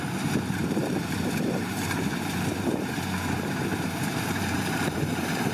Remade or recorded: remade